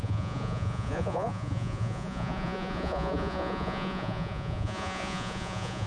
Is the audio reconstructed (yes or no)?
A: yes